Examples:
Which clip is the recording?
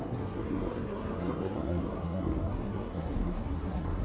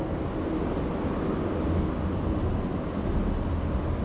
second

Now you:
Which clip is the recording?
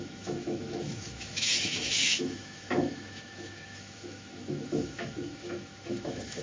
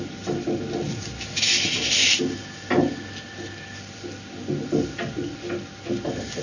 second